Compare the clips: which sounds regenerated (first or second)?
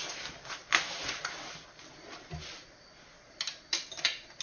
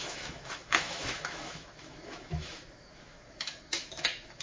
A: second